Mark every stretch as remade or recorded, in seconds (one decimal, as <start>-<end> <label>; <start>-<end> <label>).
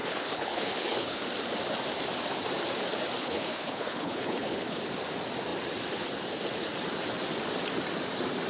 0.0-1.2 remade; 1.2-3.2 recorded; 3.2-4.8 remade; 4.8-8.5 recorded